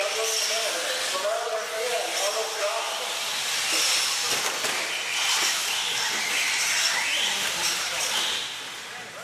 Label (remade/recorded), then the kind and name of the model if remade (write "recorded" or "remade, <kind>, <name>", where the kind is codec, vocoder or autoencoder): recorded